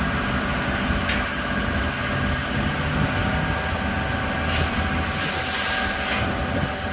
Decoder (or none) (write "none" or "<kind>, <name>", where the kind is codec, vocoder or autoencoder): none